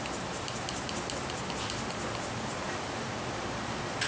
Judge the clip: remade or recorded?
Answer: recorded